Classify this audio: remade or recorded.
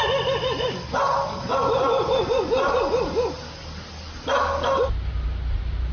recorded